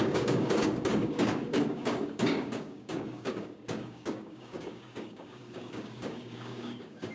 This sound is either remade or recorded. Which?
remade